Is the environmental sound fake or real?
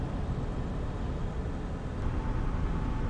real